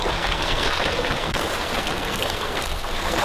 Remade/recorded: remade